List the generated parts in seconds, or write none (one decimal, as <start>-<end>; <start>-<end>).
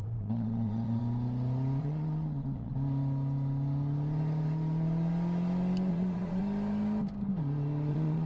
0.0-1.0; 1.8-2.7; 5.9-6.4; 7.9-8.3